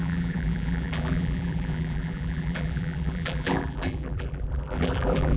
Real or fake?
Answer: fake